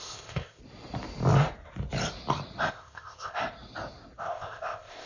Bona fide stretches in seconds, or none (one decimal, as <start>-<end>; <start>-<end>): 0.6-2.7; 3.4-4.2